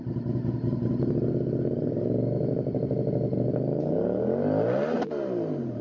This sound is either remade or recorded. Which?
recorded